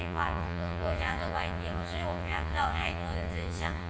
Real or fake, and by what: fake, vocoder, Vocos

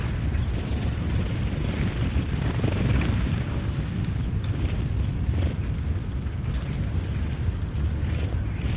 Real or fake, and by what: real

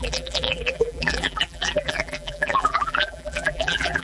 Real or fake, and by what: fake, vocoder, BigVGAN v2